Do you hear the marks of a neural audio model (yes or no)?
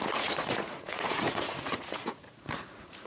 yes